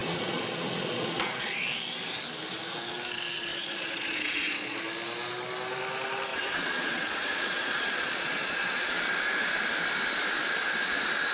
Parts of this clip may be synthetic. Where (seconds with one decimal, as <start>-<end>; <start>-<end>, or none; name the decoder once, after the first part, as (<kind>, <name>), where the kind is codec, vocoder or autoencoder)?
0.0-1.6 (vocoder, Vocos); 3.5-4.8; 6.3-9.0